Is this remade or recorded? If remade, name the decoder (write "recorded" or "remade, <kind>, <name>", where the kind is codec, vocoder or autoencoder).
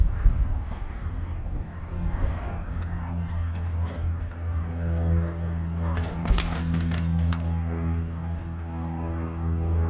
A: remade, codec, DAC